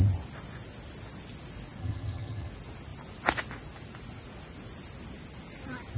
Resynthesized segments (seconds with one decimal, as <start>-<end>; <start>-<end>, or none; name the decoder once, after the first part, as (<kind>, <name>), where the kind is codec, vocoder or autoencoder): 1.8-2.5 (vocoder, HiFi-GAN)